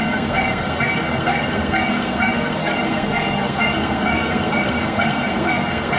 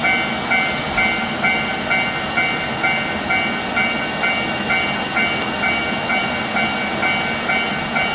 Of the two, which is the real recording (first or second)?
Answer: second